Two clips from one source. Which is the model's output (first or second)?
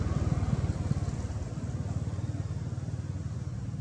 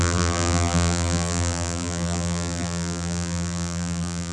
second